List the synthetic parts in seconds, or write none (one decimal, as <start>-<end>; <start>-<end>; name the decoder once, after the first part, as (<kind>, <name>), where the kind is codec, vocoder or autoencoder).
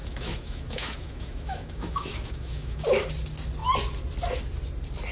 0.0-3.1 (autoencoder, DAC-VAE)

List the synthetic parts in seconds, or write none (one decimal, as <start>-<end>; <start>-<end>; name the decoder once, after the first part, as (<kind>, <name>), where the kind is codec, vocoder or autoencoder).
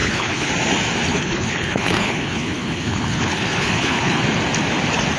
0.0-0.5 (codec, HILCodec); 1.1-4.2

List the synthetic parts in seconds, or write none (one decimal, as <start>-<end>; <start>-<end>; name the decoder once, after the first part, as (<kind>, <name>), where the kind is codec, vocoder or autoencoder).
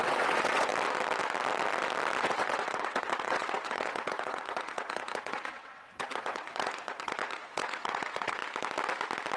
0.0-0.7 (vocoder, WaveNeXt); 2.2-8.4